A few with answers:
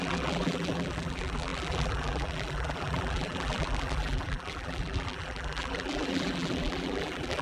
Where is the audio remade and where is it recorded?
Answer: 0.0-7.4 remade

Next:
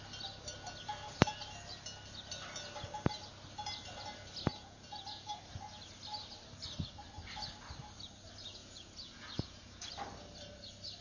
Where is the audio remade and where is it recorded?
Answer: 0.0-4.5 recorded; 4.5-5.4 remade; 5.4-8.6 recorded; 8.6-9.9 remade; 9.9-11.0 recorded

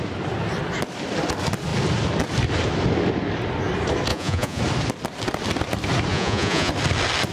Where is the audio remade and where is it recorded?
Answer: 0.0-4.1 recorded; 4.1-4.6 remade; 4.6-6.1 recorded; 6.1-6.7 remade; 6.7-7.3 recorded

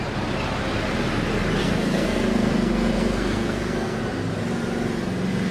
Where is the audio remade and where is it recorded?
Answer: 0.0-1.6 recorded; 1.6-4.0 remade; 4.0-5.5 recorded

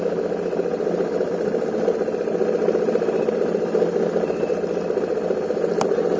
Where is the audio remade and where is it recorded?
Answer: 0.0-6.2 recorded

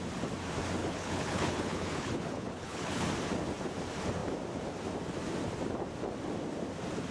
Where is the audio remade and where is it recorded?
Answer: 0.0-0.8 recorded; 0.8-3.1 remade; 3.1-7.1 recorded